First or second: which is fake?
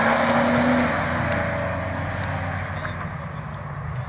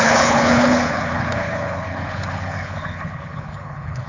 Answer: second